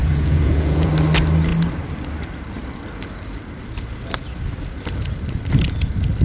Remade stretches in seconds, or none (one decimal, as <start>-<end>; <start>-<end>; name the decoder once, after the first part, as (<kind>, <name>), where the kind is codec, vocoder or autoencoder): 0.0-0.9 (vocoder, Vocos)